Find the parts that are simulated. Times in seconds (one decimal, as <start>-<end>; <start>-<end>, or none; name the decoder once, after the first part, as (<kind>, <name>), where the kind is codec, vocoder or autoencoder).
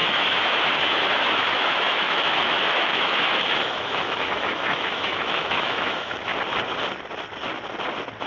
0.0-6.3 (autoencoder, DAC-VAE)